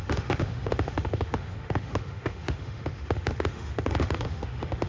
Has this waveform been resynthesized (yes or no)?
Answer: yes